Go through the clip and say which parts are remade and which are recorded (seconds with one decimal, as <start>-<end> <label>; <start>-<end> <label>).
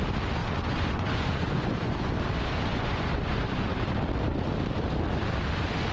0.0-0.4 recorded; 0.4-2.1 remade; 2.1-2.7 recorded; 2.7-3.7 remade; 3.7-5.9 recorded